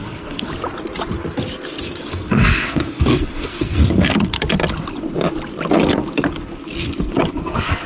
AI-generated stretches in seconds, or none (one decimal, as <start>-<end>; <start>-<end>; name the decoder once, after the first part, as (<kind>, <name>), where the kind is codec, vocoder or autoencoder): 0.0-0.5 (codec, SNAC); 2.0-4.3; 7.3-7.9